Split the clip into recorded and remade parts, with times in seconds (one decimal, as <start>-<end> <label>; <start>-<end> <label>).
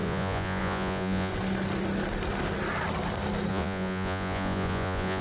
0.0-1.3 remade; 1.3-3.5 recorded; 3.5-5.2 remade